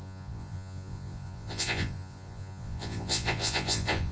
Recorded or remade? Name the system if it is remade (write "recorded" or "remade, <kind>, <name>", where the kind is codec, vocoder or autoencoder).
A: remade, vocoder, Vocos